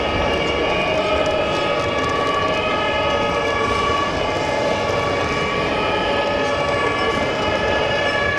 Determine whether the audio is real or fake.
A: real